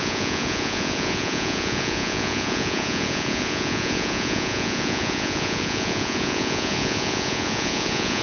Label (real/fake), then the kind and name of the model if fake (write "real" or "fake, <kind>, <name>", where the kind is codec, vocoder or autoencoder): fake, vocoder, Vocos